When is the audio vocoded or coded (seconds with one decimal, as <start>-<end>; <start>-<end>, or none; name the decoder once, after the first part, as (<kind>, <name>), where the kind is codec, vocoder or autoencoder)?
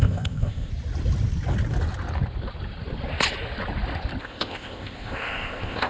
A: 0.0-0.7 (codec, ZipCodec); 4.2-5.9